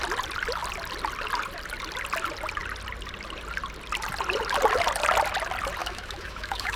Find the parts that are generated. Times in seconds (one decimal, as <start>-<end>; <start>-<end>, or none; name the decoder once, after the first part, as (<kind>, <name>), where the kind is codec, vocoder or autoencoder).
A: 5.8-6.8 (autoencoder, DAC-VAE)